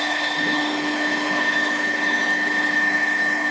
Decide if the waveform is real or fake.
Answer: fake